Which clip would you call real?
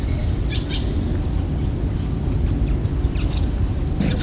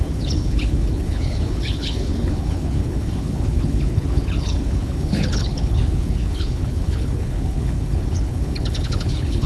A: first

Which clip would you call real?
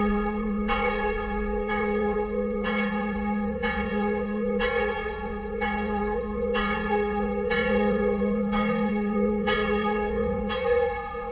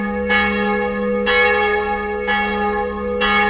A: second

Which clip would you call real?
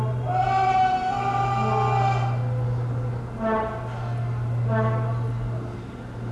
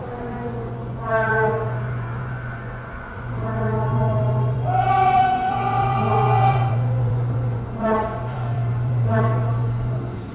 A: first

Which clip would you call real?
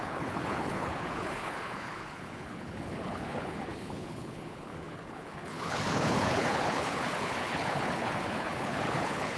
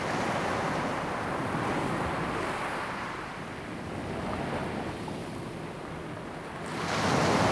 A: second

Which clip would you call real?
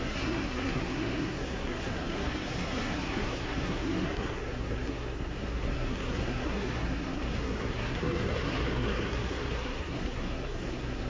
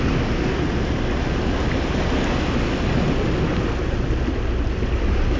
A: second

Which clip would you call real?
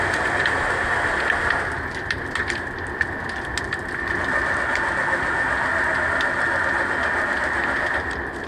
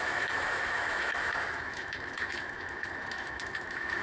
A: first